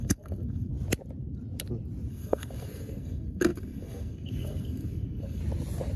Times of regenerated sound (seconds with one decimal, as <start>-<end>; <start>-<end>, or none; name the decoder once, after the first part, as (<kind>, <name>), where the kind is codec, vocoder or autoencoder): 0.0-0.7 (codec, SNAC); 2.1-5.4